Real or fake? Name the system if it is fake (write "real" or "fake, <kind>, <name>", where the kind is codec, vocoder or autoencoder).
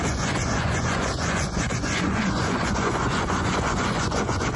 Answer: fake, vocoder, Vocos